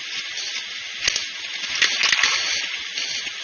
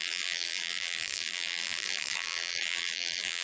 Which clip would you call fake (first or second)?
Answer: second